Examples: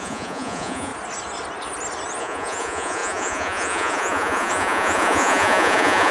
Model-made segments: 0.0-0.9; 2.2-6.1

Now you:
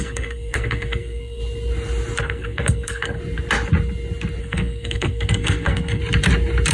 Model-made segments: 0.0-1.4; 2.2-3.2; 4.4-6.0

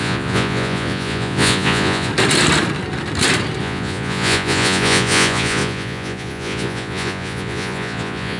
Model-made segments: 0.0-2.1; 3.6-8.4

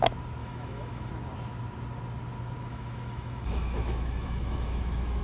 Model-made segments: 0.4-1.1; 2.7-5.2